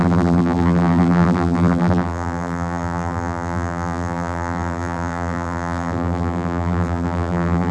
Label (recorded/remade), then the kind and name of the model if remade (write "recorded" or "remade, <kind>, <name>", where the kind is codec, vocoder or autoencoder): remade, vocoder, BigVGAN v2